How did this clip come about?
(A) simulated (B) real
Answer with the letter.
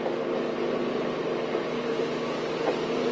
B